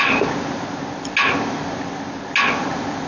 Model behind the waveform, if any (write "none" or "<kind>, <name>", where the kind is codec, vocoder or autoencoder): none